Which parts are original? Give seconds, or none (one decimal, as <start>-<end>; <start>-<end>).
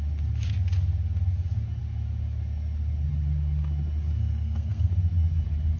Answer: 0.0-4.2; 4.9-5.8